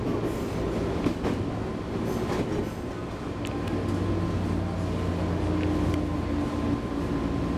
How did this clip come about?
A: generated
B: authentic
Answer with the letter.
B